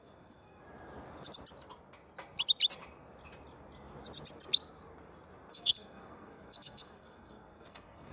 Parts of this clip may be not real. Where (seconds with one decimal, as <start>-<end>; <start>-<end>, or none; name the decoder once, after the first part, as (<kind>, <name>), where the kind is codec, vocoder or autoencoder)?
0.0-0.6 (codec, SNAC); 5.5-8.1

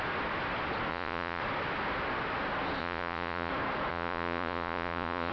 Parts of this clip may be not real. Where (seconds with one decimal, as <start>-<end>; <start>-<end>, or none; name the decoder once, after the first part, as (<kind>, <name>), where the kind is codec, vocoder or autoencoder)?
0.9-1.4 (vocoder, Vocos); 2.8-3.5; 3.9-5.3

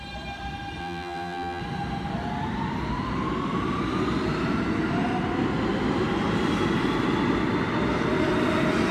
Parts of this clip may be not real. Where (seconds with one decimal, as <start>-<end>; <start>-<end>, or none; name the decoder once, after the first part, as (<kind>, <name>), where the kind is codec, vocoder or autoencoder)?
0.8-1.6 (vocoder, BigVGAN v2)

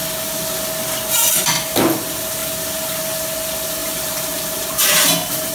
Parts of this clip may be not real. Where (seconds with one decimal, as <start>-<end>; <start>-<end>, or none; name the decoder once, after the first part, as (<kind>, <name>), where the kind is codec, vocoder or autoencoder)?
3.8-5.5 (vocoder, BigVGAN v2)

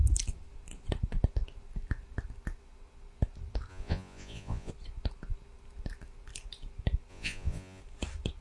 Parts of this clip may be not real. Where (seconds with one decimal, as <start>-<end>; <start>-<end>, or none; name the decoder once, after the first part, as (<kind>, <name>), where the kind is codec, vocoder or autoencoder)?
3.7-4.7 (vocoder, Vocos); 7.1-7.8

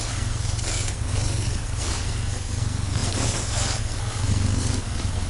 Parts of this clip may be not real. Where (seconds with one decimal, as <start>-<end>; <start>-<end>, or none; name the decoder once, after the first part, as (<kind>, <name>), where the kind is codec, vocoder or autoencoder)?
0.0-5.3 (codec, SNAC)

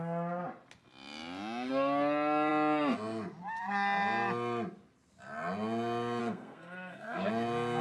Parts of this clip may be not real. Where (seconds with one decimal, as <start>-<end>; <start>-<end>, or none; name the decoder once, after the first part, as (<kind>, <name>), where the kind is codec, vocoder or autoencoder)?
6.2-7.3 (codec, SNAC)

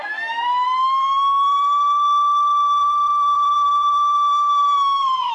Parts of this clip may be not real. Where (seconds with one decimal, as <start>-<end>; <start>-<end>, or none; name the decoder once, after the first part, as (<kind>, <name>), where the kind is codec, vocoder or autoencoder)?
2.8-5.3 (vocoder, BigVGAN v2)